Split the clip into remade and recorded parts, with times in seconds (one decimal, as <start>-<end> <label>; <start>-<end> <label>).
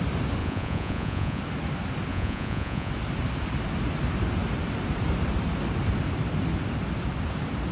0.0-0.4 recorded; 0.4-1.4 remade; 1.4-2.1 recorded; 2.1-2.9 remade; 2.9-7.7 recorded